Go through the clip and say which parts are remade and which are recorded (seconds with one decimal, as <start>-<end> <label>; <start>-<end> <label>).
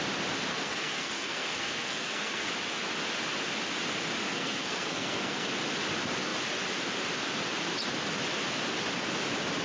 0.0-0.5 recorded; 0.5-2.5 remade; 2.5-4.3 recorded; 4.3-5.5 remade; 5.5-9.6 recorded